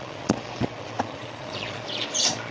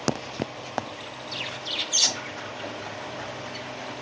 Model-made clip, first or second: first